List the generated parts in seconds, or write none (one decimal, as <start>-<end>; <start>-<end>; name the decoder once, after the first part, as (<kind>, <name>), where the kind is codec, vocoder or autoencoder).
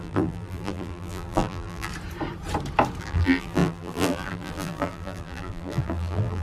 0.0-1.9 (vocoder, BigVGAN v2); 3.0-6.4